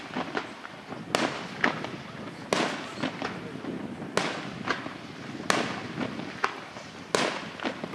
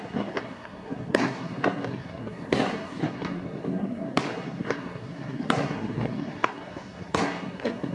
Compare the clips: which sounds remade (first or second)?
second